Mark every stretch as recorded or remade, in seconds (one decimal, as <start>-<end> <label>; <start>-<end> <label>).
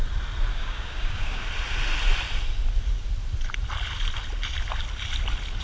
0.0-0.5 recorded; 0.5-1.4 remade; 1.4-5.6 recorded